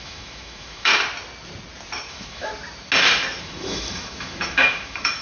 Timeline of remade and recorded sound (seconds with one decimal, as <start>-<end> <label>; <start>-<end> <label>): 0.0-0.9 remade; 0.9-2.1 recorded; 2.1-2.5 remade; 2.5-3.4 recorded; 3.4-5.2 remade